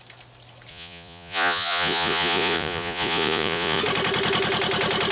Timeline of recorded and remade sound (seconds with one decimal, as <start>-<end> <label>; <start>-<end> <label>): 0.0-0.7 recorded; 0.7-3.8 remade; 3.8-5.1 recorded